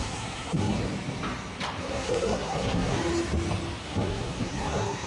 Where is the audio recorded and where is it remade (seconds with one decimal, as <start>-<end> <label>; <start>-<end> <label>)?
0.0-0.8 remade; 0.8-1.8 recorded; 1.8-3.0 remade; 3.0-3.8 recorded; 3.8-5.1 remade